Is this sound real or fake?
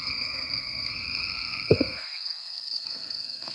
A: fake